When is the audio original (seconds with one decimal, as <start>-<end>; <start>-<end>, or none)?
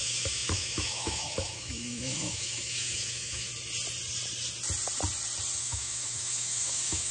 3.5-5.6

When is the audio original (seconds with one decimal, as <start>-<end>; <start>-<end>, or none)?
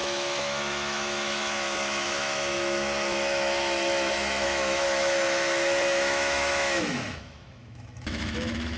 none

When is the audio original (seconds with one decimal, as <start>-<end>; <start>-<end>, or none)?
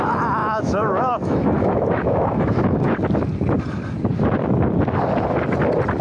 0.0-0.4; 2.9-6.0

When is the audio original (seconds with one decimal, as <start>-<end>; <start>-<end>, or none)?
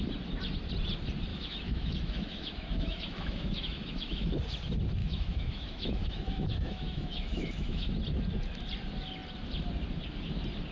0.0-1.3; 4.4-5.0; 7.9-10.7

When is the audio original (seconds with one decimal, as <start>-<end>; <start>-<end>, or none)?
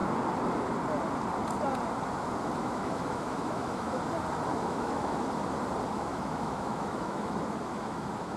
0.0-2.6; 4.0-4.5; 5.2-5.9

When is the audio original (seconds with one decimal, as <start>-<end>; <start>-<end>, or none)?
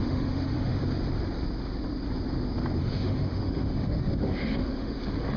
0.8-2.8; 5.0-5.4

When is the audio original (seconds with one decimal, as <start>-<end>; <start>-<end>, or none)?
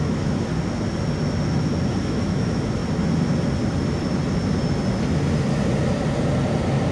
0.5-1.9; 2.8-6.9